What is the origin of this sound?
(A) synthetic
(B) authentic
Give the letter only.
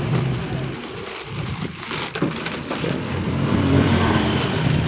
A